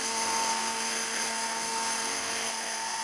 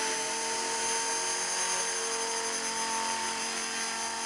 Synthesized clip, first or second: first